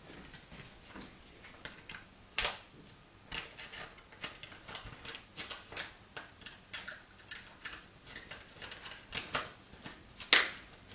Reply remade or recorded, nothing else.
recorded